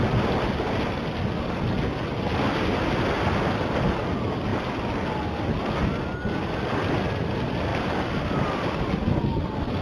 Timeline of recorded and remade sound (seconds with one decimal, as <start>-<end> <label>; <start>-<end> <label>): 0.0-7.7 recorded; 7.7-9.8 remade